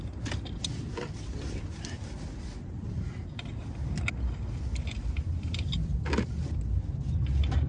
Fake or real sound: real